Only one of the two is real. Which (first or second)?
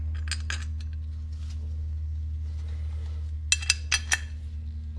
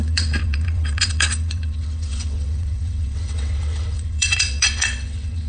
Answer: first